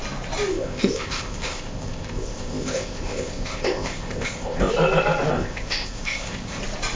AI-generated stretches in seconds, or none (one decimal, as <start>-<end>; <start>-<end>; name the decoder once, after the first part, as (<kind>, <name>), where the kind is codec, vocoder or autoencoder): 0.5-4.7 (codec, ZipCodec); 5.3-6.6